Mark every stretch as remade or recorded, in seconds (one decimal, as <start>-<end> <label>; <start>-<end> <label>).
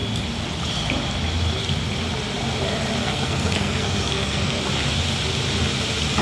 0.0-3.0 recorded; 3.0-4.6 remade; 4.6-6.2 recorded